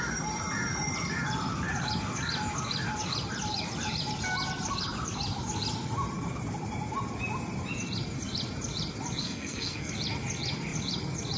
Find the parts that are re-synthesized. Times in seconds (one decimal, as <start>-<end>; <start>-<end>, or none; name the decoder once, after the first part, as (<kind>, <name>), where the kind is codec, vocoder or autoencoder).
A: 9.2-9.9 (codec, SNAC)